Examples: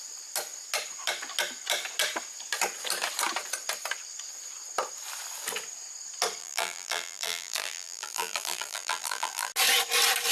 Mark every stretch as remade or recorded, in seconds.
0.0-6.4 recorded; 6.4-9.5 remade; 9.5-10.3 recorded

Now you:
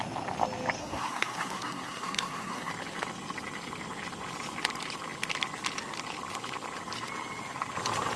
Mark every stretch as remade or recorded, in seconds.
0.0-0.8 recorded; 0.8-2.7 remade; 2.7-8.2 recorded

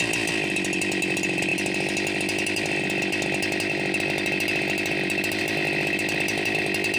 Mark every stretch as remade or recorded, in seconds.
0.0-7.0 recorded

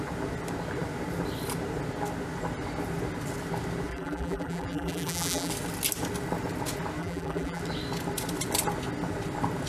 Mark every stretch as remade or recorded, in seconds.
0.0-3.9 recorded; 3.9-5.5 remade; 5.5-7.0 recorded; 7.0-7.6 remade; 7.6-9.7 recorded